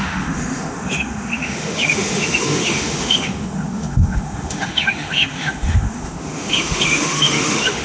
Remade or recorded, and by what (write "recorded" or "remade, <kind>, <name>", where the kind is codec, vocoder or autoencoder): remade, autoencoder, DAC-VAE